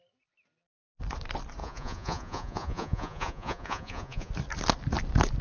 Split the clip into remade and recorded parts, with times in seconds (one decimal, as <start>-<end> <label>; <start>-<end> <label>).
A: 0.0-1.6 recorded; 1.6-4.3 remade; 4.3-5.4 recorded